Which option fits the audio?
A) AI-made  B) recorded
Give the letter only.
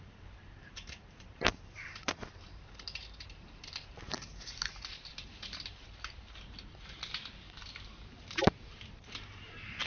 A